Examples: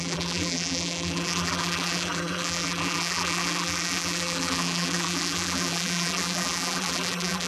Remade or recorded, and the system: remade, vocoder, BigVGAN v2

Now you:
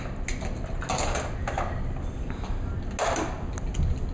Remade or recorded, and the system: recorded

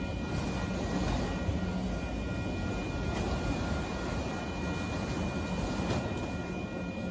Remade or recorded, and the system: recorded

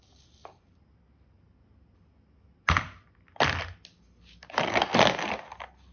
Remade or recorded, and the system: recorded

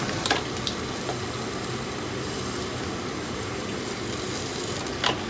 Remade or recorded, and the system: recorded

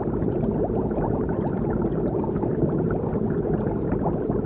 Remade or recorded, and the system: recorded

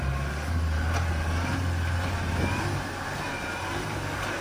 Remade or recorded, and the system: recorded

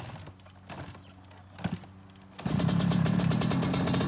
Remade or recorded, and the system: recorded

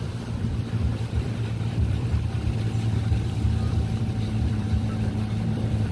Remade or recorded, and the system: remade, vocoder, BigVGAN v2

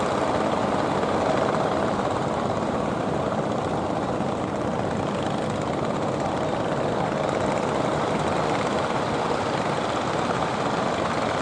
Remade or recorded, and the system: remade, vocoder, BigVGAN v2